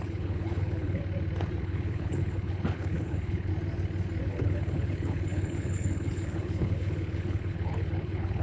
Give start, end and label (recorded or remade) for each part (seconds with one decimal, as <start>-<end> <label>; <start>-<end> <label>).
0.0-1.0 remade; 1.0-1.6 recorded; 1.6-3.5 remade; 3.5-4.3 recorded; 4.3-8.4 remade

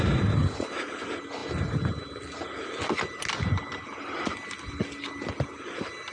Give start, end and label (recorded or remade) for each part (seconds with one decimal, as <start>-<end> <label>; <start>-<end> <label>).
0.0-6.1 recorded

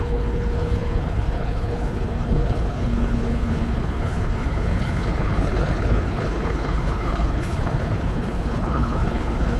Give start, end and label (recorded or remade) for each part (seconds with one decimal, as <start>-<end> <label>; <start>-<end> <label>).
0.0-9.6 remade